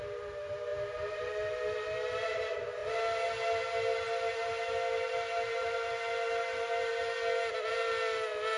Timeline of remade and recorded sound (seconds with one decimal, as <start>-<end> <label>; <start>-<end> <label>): 0.0-0.7 recorded; 0.7-1.3 remade; 1.3-8.6 recorded